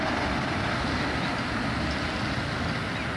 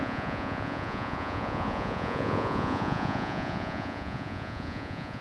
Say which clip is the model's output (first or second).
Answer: second